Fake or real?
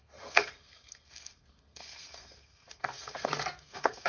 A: fake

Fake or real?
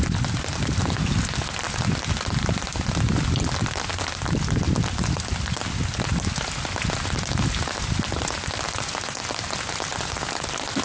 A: real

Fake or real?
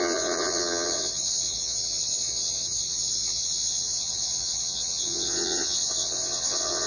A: fake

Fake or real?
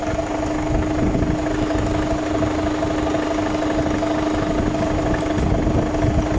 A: real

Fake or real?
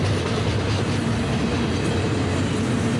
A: real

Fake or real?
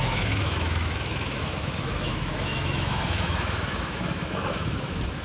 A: fake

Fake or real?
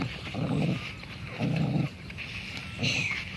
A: real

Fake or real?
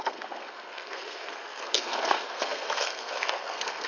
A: fake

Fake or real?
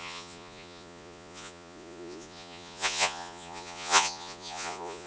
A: fake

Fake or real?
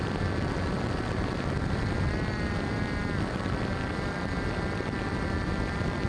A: real